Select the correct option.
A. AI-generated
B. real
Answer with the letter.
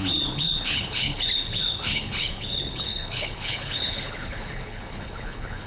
A